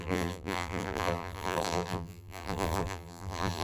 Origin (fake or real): fake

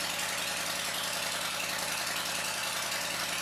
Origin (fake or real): real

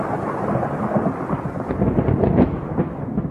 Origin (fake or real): real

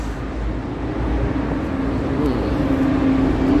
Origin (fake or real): real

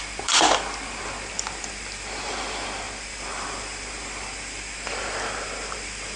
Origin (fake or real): real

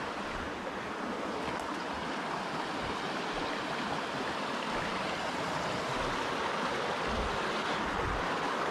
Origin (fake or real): real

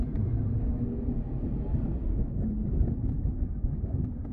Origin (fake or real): fake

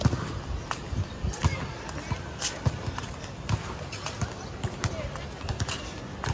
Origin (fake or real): real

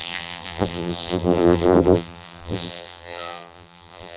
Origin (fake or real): fake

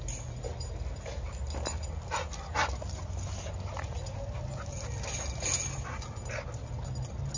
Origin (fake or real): real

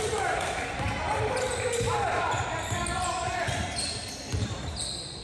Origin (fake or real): fake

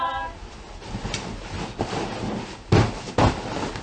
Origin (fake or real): real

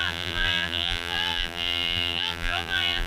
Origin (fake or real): fake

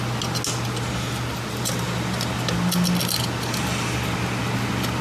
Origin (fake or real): real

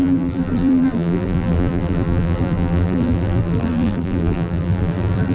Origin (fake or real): fake